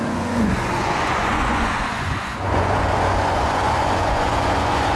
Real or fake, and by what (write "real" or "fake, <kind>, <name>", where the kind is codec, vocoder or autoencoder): fake, vocoder, Vocos